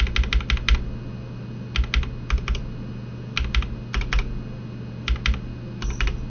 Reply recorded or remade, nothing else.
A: recorded